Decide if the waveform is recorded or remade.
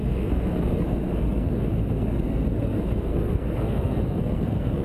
remade